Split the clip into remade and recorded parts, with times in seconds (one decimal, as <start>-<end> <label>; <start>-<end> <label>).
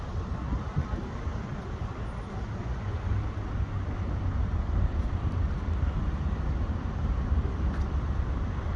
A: 0.0-2.6 recorded; 2.6-3.1 remade; 3.1-8.8 recorded